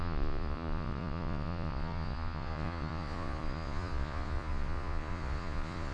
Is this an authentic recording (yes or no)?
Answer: no